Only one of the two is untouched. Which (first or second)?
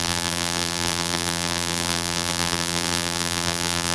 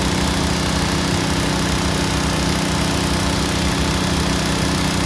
second